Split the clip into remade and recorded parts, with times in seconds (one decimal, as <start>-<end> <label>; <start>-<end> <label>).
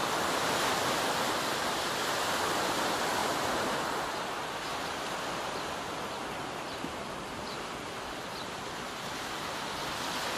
0.0-10.4 recorded